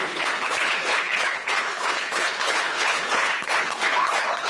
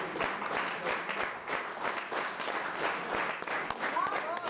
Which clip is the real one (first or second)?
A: second